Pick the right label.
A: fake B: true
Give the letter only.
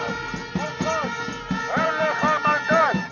B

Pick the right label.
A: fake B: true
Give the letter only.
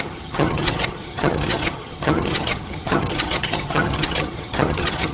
A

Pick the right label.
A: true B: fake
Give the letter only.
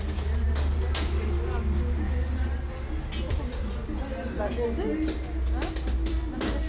A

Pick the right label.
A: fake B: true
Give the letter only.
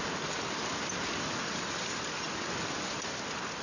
B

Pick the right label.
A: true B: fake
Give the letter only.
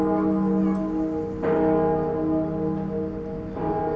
A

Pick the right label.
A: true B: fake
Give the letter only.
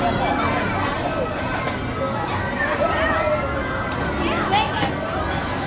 A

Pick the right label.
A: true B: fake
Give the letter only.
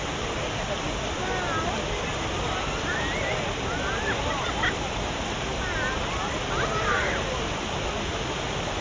A